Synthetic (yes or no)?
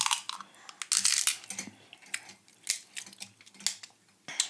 no